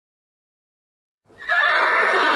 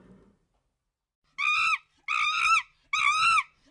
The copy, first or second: first